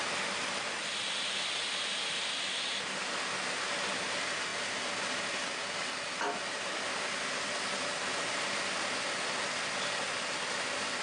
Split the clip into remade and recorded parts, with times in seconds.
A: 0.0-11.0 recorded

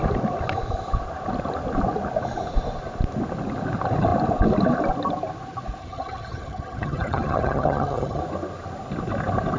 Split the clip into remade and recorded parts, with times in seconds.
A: 0.0-5.8 recorded; 5.8-8.2 remade; 8.2-9.6 recorded